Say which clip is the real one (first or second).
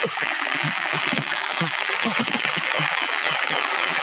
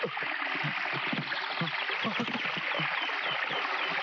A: second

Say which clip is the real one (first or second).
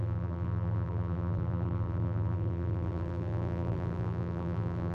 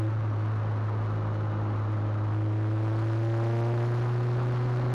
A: second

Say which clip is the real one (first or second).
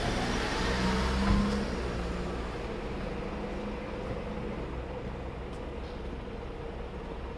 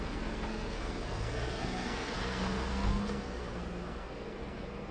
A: first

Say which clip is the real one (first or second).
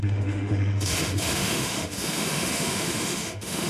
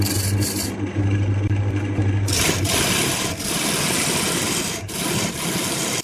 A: second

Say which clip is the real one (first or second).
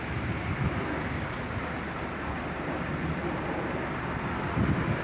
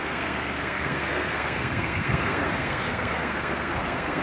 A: first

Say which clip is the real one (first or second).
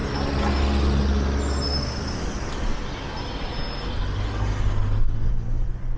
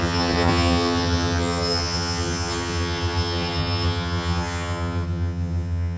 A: first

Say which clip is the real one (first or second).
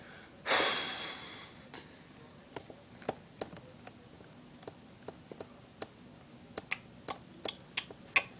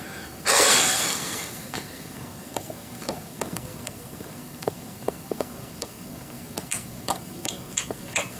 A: first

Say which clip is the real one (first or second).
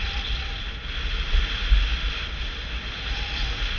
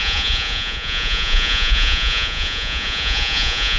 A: first